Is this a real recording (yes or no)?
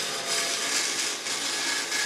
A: yes